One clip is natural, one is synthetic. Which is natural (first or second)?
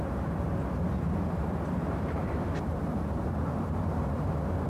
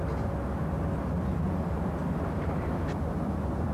second